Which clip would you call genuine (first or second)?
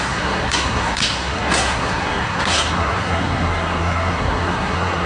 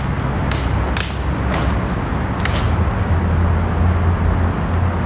second